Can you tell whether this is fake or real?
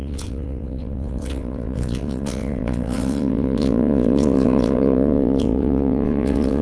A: fake